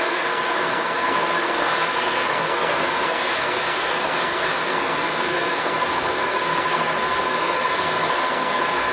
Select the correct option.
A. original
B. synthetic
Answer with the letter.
B